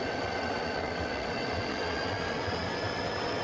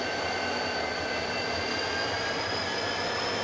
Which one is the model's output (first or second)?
first